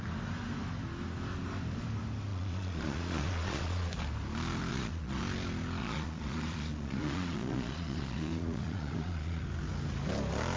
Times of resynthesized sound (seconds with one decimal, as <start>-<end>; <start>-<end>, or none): 2.3-4.0; 4.7-5.2; 5.8-9.4

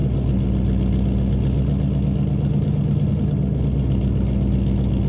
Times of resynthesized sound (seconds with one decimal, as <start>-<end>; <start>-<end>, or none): none

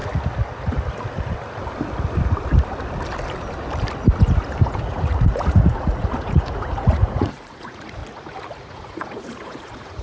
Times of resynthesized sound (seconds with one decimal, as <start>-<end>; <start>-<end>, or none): 4.6-8.0; 8.6-10.0

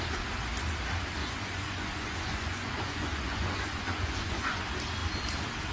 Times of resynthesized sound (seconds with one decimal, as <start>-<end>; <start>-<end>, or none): 1.2-4.6

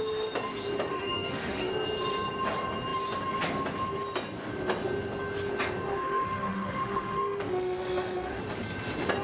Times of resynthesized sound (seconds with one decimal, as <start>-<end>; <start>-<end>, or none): 0.9-1.7; 5.9-8.4

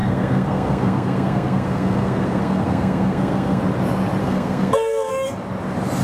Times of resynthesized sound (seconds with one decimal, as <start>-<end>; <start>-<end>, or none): 0.0-3.6; 4.2-5.1